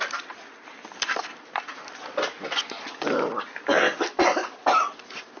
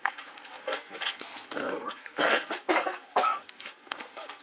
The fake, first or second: second